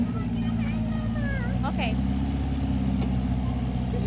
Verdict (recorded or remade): recorded